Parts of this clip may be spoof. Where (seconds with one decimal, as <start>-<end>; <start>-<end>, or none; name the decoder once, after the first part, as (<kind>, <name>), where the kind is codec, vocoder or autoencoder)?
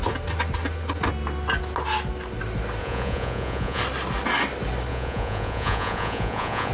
2.8-3.8 (vocoder, Vocos); 4.9-6.7